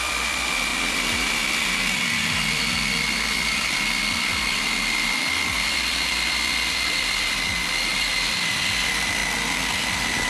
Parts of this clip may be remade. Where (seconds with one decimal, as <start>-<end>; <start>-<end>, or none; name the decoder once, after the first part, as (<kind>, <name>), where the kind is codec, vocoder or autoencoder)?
0.0-9.2 (vocoder, BigVGAN v2)